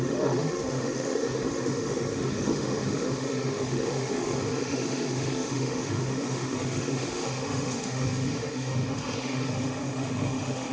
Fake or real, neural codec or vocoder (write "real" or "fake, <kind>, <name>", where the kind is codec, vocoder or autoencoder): fake, autoencoder, DAC-VAE